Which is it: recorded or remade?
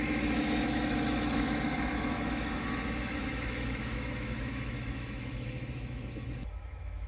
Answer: remade